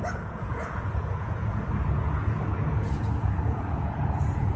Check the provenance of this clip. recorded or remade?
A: remade